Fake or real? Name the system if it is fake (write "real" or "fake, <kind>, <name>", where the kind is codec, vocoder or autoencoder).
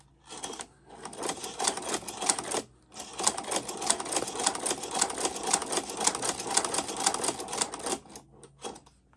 real